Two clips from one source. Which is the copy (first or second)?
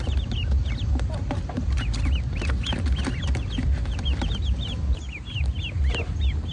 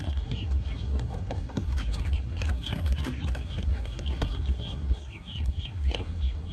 second